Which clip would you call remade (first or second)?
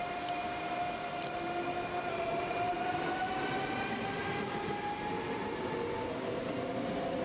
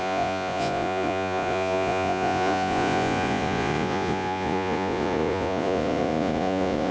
second